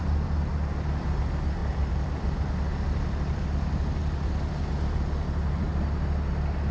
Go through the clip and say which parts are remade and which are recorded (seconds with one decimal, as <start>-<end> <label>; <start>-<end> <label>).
0.0-6.7 recorded